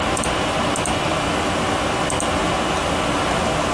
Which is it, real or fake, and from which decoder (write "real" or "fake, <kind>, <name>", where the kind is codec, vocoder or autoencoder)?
real